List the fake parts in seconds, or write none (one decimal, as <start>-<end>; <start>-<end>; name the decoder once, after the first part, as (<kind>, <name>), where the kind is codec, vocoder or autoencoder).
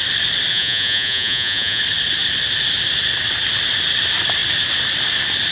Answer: 0.5-1.8 (vocoder, Vocos)